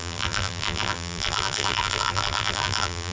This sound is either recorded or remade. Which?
remade